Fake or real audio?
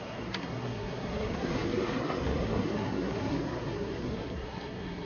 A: fake